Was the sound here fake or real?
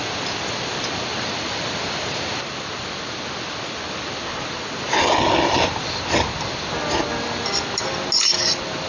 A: real